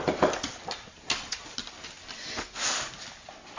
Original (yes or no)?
yes